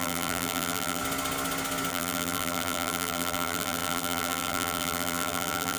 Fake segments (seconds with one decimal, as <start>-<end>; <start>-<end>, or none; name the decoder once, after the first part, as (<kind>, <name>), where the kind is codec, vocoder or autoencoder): 0.0-1.0 (vocoder, BigVGAN v2); 1.9-5.8